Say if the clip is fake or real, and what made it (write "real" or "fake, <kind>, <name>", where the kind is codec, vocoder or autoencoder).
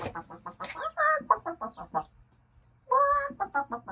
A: real